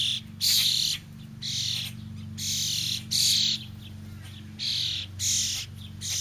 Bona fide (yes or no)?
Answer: yes